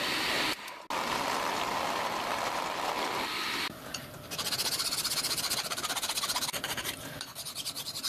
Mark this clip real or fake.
real